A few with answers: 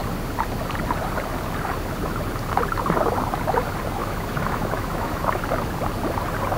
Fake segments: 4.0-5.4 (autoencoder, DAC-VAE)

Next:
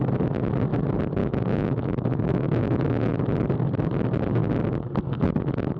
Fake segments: 1.2-3.1 (autoencoder, DAC-VAE)

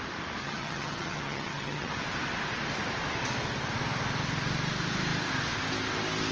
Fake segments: 0.4-1.9 (vocoder, HiFi-GAN)

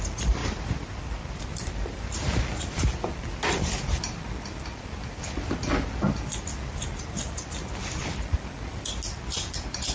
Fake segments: 0.4-2.0 (vocoder, BigVGAN v2)